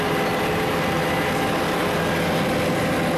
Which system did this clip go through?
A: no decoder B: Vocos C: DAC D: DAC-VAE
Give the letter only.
A